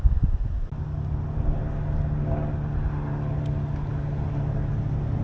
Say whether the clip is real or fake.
real